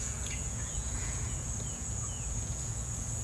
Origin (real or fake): fake